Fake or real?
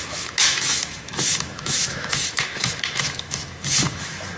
fake